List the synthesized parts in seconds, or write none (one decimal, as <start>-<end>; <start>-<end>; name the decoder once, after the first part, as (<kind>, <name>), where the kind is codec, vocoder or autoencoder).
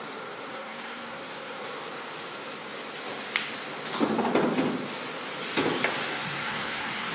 0.5-1.6 (codec, SNAC); 6.1-7.1